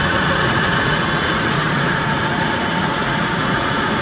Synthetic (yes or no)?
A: yes